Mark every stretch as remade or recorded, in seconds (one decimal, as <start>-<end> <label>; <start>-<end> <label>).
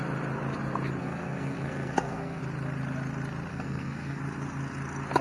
0.0-1.0 recorded; 1.0-2.4 remade; 2.4-3.5 recorded; 3.5-4.2 remade; 4.2-5.2 recorded